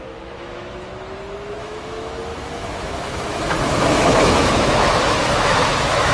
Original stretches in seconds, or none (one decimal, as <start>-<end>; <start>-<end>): 0.9-1.6